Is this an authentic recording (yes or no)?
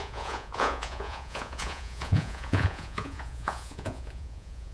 no